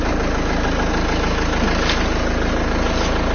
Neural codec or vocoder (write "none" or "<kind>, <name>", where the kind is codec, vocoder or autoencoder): none